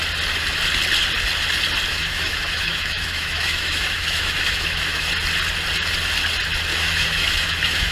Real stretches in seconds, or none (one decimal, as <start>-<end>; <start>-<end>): 0.0-1.9; 5.1-6.7